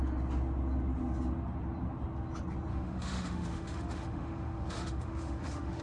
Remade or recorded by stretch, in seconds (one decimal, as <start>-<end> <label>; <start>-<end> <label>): 0.0-2.7 recorded; 2.7-5.8 remade